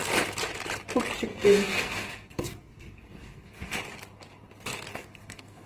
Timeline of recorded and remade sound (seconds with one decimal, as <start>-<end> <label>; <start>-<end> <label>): 0.0-1.3 recorded; 1.3-3.8 remade; 3.8-4.9 recorded; 4.9-5.7 remade